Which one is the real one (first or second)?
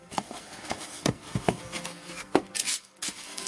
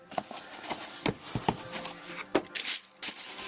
second